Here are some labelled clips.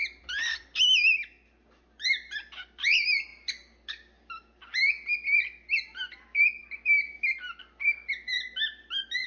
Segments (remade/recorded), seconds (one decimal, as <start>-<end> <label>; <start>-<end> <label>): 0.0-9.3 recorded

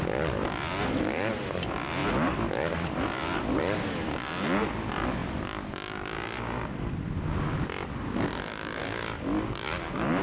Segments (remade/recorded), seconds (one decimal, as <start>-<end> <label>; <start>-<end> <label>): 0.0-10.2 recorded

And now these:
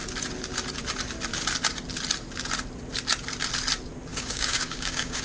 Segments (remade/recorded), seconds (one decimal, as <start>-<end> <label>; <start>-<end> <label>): 0.0-4.1 recorded; 4.1-5.2 remade

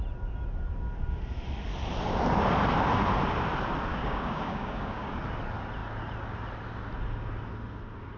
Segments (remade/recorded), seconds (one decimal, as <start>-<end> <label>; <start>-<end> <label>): 0.0-3.9 recorded; 3.9-5.1 remade; 5.1-8.2 recorded

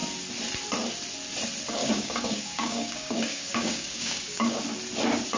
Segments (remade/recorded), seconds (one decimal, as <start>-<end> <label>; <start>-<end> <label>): 0.0-1.8 recorded; 1.8-4.6 remade; 4.6-5.4 recorded

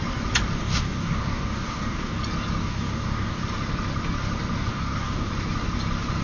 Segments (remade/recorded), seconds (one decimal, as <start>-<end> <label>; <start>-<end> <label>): 0.0-0.6 recorded; 0.6-2.2 remade; 2.2-2.6 recorded; 2.6-3.4 remade; 3.4-4.7 recorded; 4.7-5.3 remade; 5.3-6.2 recorded

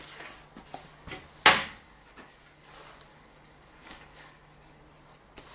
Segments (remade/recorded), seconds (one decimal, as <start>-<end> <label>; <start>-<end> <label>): 0.0-1.6 recorded; 1.6-2.7 remade; 2.7-3.1 recorded; 3.1-4.8 remade; 4.8-5.5 recorded

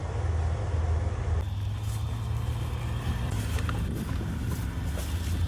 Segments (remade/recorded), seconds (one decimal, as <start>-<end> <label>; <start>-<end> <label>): 0.0-5.5 recorded